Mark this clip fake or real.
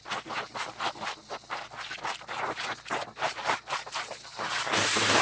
real